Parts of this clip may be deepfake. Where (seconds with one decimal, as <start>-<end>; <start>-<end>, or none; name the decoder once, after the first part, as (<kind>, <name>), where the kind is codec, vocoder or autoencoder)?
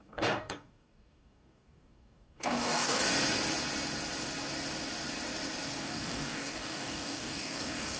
0.0-3.0 (codec, DAC); 5.8-8.0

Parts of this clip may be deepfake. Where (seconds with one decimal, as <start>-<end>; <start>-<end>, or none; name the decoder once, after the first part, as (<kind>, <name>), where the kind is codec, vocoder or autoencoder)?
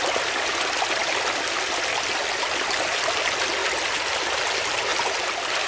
none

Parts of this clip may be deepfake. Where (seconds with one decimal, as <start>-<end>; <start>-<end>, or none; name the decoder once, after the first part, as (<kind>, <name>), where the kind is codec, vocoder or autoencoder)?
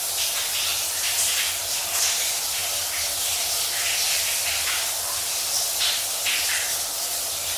0.7-1.9 (vocoder, BigVGAN v2)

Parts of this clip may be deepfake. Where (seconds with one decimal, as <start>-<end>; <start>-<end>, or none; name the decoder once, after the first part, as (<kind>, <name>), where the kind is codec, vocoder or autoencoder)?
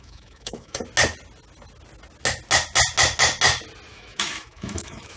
0.0-0.8 (autoencoder, DAC-VAE); 3.9-5.2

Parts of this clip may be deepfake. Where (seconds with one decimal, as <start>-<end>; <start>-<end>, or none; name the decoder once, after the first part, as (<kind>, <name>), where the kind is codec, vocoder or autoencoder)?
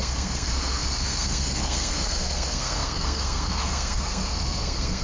0.0-5.0 (codec, SNAC)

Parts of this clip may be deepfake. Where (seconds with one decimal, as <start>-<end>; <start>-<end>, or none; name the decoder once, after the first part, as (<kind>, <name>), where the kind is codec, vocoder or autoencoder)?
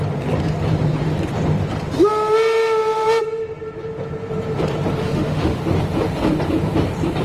5.0-5.6 (autoencoder, DAC-VAE)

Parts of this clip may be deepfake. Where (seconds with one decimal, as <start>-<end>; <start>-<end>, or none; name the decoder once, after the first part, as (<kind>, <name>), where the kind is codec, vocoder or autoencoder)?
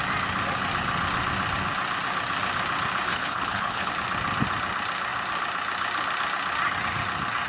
3.1-3.9 (codec, HILCodec)